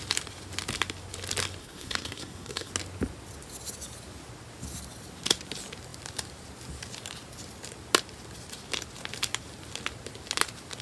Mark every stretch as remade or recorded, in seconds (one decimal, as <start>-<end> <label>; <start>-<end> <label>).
0.0-1.6 recorded; 1.6-2.7 remade; 2.7-10.8 recorded